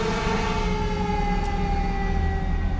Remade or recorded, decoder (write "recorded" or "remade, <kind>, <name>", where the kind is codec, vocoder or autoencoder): recorded